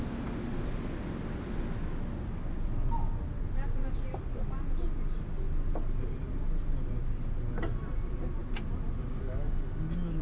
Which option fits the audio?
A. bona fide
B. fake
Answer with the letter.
A